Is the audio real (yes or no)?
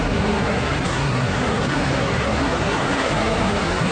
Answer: no